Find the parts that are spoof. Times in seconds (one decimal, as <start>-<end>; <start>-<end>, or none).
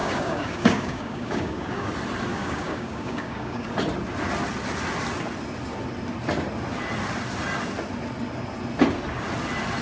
0.0-1.9; 2.3-3.7